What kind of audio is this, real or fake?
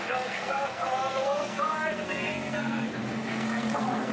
fake